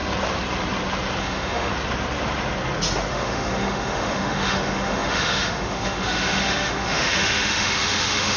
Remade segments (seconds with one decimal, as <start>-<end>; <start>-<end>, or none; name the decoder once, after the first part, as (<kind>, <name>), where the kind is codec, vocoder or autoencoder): 1.2-1.7 (autoencoder, DAC-VAE); 3.1-8.4